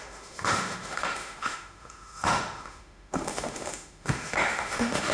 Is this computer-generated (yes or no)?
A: yes